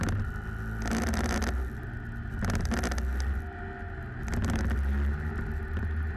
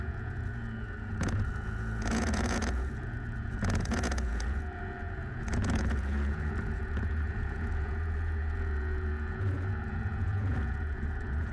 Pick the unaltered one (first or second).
first